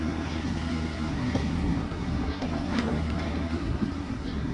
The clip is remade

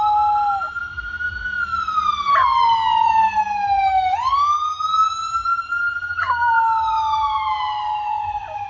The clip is recorded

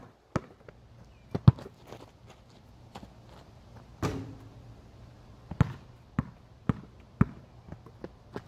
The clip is recorded